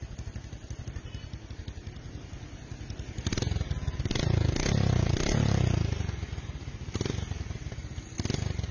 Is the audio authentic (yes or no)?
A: yes